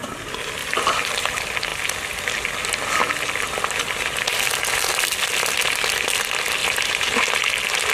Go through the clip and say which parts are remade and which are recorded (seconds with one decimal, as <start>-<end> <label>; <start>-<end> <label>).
0.0-0.6 recorded; 0.6-1.1 remade; 1.1-6.6 recorded; 6.6-7.3 remade; 7.3-7.9 recorded